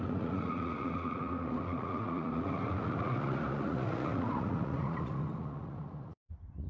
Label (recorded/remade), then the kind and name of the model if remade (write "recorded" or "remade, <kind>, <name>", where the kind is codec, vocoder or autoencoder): remade, vocoder, Vocos